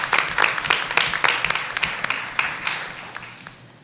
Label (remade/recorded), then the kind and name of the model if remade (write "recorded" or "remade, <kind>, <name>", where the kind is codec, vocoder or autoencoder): recorded